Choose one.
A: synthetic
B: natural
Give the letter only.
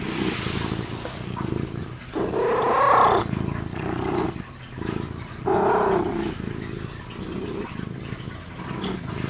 B